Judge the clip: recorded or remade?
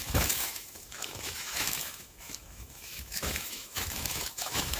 remade